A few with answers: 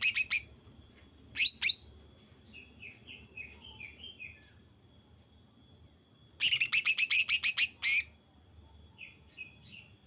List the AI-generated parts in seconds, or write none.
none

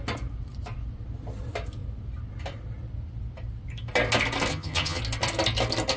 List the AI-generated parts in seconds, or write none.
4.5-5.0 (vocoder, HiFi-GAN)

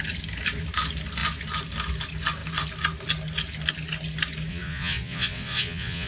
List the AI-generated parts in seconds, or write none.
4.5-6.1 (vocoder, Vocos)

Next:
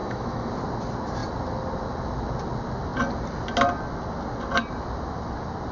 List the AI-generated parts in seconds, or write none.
0.0-0.5 (autoencoder, DAC-VAE)

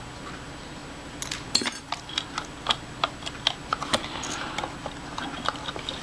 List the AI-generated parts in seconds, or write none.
none

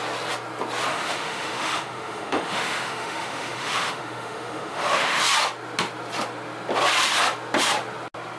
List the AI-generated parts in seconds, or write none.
0.9-5.2 (autoencoder, DAC-VAE)

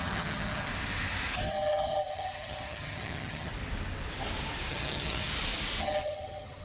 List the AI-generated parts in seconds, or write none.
0.0-0.7 (vocoder, HiFi-GAN); 1.5-3.5; 4.7-5.3; 5.8-6.6

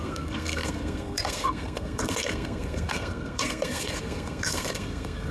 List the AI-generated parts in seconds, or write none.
0.0-5.3 (codec, SNAC)